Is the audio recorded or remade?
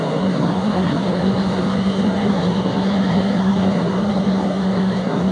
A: remade